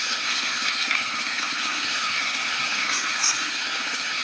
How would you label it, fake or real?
fake